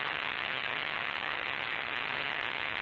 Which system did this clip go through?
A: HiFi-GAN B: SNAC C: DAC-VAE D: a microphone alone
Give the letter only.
A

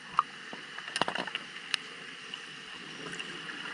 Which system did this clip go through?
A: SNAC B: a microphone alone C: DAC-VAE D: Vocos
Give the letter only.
B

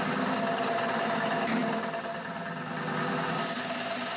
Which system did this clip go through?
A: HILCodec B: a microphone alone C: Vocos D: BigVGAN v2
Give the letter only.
B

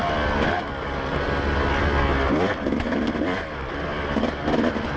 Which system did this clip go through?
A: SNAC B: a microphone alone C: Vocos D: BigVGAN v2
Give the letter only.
B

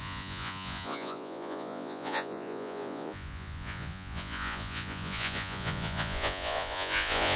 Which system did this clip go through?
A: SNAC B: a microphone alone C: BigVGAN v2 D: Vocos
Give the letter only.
D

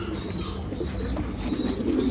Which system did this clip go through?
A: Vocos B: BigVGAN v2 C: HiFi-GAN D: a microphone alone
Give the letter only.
D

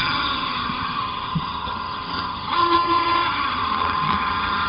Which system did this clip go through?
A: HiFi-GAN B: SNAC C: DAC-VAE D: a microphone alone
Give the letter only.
A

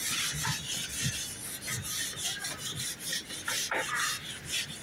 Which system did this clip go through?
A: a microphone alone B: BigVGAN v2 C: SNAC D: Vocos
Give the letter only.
A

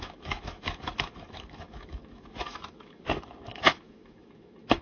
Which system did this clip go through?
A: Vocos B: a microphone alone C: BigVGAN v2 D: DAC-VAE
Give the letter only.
D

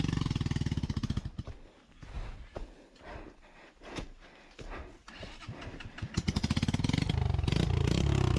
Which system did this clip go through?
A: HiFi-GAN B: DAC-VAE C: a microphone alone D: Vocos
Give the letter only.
C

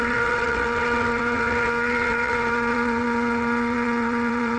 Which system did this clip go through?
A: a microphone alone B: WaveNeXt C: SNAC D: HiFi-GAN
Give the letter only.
B